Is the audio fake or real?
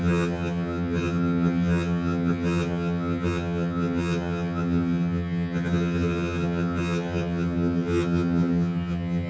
fake